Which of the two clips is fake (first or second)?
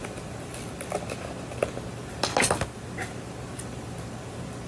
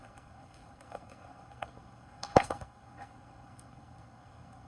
second